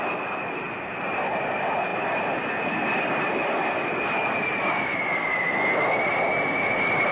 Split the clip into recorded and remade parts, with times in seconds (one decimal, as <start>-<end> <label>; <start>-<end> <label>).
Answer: 0.0-7.1 recorded